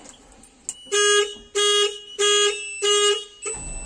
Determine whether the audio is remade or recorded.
recorded